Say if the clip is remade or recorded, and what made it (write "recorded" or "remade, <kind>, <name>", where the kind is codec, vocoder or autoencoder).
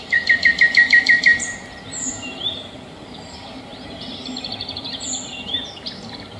remade, vocoder, BigVGAN v2